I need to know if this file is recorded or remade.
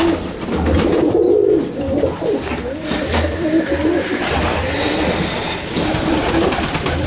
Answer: recorded